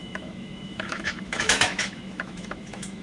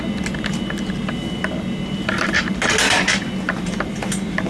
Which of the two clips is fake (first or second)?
first